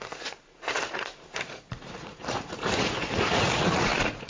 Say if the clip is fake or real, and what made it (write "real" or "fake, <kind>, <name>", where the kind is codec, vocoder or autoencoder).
fake, vocoder, Vocos